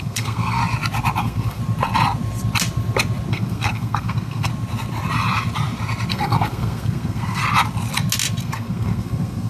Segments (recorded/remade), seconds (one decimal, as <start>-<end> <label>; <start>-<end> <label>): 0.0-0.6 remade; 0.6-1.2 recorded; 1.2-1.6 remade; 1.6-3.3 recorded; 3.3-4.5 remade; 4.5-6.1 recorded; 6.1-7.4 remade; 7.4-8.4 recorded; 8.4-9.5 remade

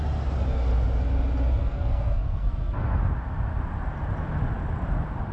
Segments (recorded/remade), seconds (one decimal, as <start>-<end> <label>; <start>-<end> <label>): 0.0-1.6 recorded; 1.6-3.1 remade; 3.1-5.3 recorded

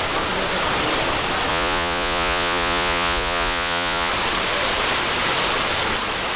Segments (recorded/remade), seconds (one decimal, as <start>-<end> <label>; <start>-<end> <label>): 0.0-1.5 recorded; 1.5-4.1 remade; 4.1-6.4 recorded

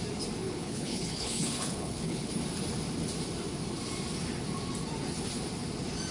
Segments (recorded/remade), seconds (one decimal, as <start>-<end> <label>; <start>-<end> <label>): 0.0-0.4 recorded; 0.4-2.3 remade; 2.3-6.1 recorded

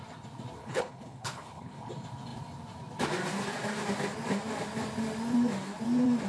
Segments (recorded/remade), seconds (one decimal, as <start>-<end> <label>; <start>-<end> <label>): 0.0-0.6 recorded; 0.6-1.9 remade; 1.9-6.3 recorded

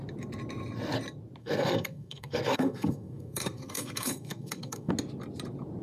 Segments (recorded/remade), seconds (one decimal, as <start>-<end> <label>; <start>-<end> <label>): 0.0-1.4 recorded; 1.4-4.9 remade; 4.9-5.8 recorded